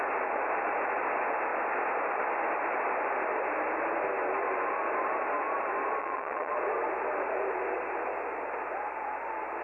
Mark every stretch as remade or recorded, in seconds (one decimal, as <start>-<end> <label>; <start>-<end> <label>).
0.0-6.0 recorded; 6.0-6.5 remade; 6.5-9.6 recorded